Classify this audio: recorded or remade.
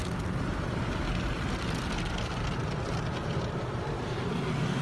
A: recorded